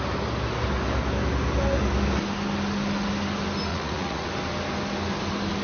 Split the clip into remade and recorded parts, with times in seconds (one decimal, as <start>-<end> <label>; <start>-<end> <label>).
0.0-3.7 recorded; 3.7-4.3 remade; 4.3-5.6 recorded